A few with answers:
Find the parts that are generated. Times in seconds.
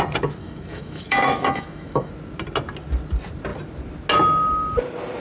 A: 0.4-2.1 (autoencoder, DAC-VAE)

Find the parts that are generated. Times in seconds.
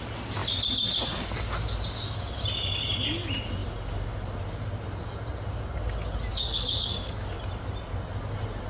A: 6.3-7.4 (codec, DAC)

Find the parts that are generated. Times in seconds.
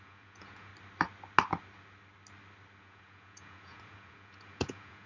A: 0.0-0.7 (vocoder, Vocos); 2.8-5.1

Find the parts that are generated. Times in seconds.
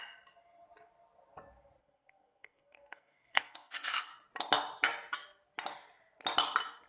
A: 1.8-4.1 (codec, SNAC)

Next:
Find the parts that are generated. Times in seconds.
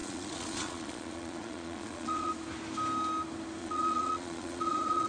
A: 0.0-2.3 (vocoder, Vocos); 3.6-5.1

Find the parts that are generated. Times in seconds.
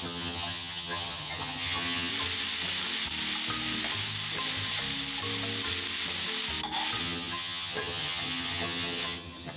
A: 0.0-2.1 (vocoder, HiFi-GAN); 7.0-9.6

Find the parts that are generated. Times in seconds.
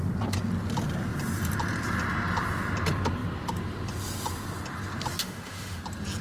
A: 5.2-5.8 (autoencoder, DAC-VAE)